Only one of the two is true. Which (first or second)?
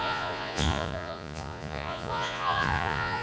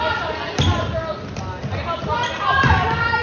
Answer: second